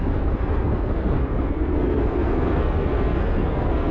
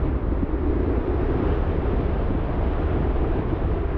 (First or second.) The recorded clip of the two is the second